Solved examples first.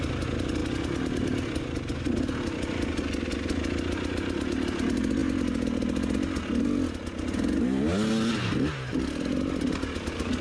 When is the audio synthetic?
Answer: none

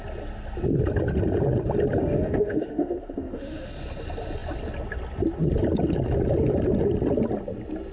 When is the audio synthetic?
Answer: 2.0-3.7 (autoencoder, DAC-VAE)

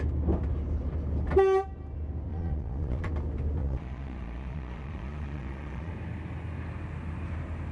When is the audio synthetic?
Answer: 2.3-3.1 (vocoder, Vocos); 3.6-5.9

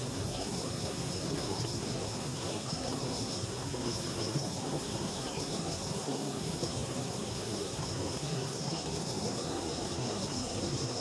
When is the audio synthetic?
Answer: 0.0-11.0 (codec, SNAC)